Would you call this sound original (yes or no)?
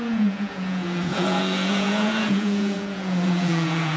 no